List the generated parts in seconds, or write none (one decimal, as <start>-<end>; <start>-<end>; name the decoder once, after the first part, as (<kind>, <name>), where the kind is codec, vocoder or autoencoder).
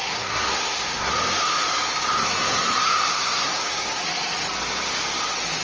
0.0-1.1 (codec, SNAC); 2.2-4.0